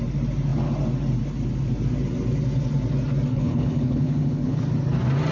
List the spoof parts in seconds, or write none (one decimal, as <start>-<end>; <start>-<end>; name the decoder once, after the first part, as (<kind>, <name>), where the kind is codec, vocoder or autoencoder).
3.3-4.6 (codec, HILCodec)